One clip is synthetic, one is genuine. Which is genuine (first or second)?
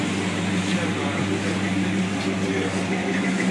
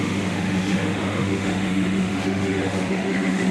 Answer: first